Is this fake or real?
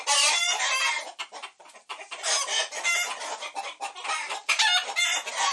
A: real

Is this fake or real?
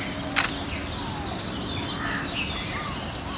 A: real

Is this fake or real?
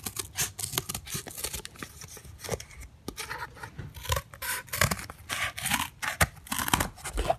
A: real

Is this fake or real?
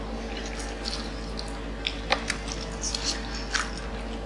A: real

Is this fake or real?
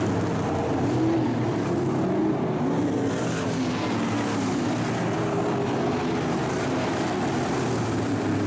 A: real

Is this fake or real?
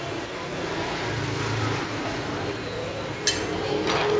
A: real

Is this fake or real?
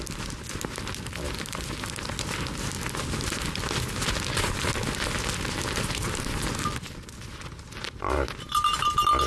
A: real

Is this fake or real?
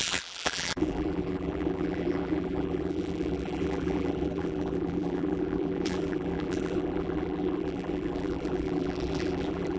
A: fake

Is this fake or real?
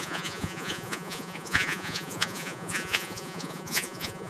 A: fake